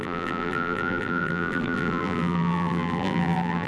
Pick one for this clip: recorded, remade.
remade